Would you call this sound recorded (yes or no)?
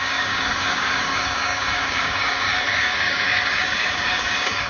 no